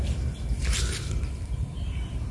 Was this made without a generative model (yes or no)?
yes